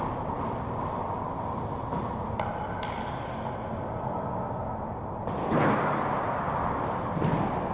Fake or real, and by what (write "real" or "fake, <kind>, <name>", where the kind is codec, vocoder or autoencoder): real